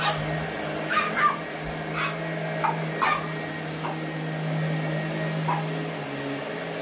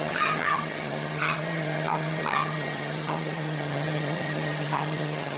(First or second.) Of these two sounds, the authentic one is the first